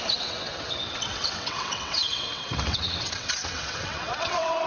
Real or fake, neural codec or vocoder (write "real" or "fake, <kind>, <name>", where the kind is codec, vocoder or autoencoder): fake, vocoder, WaveNeXt